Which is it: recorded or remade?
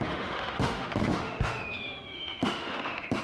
remade